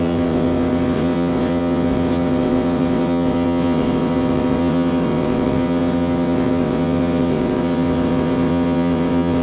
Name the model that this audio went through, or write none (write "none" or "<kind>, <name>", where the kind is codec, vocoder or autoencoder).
vocoder, WaveNeXt